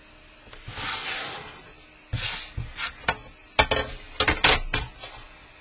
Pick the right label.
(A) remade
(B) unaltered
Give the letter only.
B